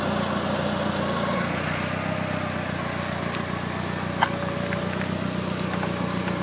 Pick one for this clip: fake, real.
real